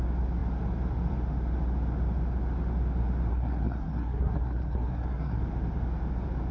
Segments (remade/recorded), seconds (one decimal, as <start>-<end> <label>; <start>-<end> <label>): 0.0-3.3 recorded; 3.3-5.4 remade; 5.4-6.5 recorded